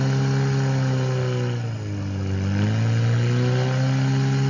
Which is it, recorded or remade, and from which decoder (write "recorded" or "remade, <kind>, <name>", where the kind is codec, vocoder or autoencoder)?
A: recorded